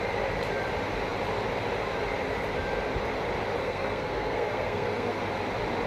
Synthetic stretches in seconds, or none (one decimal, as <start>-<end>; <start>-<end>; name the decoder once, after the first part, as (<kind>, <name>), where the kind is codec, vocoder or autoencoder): 3.6-5.2 (codec, SNAC)